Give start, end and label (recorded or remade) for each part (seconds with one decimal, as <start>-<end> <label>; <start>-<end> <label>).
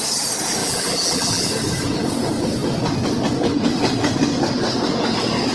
0.0-0.6 recorded; 0.6-1.5 remade; 1.5-5.5 recorded